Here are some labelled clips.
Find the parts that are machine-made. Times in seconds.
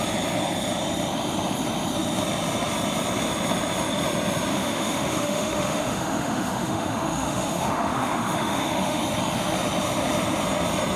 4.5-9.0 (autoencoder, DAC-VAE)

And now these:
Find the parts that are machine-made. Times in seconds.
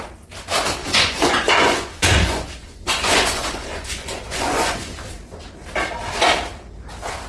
0.8-5.1 (vocoder, Vocos)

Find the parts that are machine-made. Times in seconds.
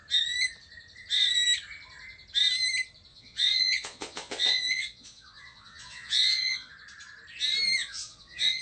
3.1-6.7 (vocoder, Vocos); 7.8-8.6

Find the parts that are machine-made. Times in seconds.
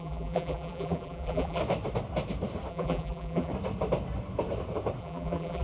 0.0-1.6 (vocoder, BigVGAN v2); 2.7-3.5; 5.0-5.6